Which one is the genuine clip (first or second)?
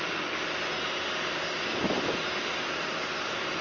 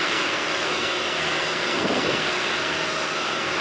first